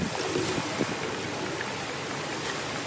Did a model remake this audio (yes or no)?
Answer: no